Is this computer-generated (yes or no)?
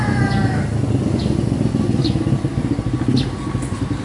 no